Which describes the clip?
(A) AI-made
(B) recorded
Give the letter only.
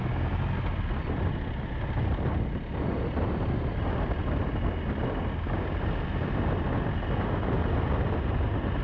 B